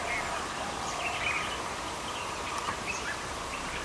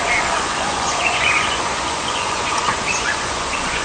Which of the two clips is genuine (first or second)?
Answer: first